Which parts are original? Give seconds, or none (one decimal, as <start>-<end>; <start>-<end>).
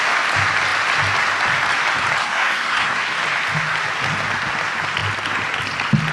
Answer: 0.0-2.2; 3.0-6.1